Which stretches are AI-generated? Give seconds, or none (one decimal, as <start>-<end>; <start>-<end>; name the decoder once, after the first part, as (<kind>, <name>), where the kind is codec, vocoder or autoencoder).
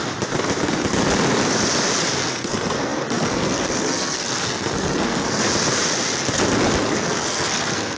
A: 2.3-5.4 (codec, SNAC); 6.8-8.0